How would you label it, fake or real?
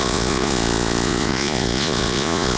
fake